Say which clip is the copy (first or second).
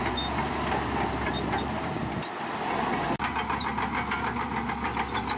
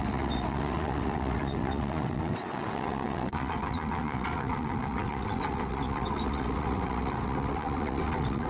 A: second